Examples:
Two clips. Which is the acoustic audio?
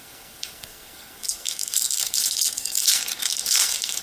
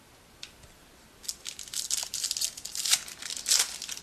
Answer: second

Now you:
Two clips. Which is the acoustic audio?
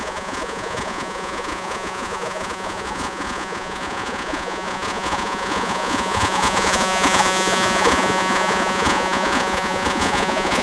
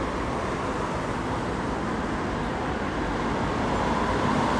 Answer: second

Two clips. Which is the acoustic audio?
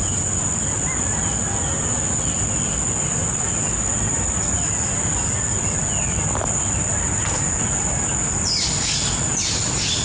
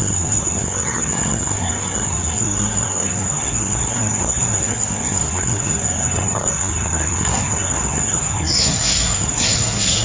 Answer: first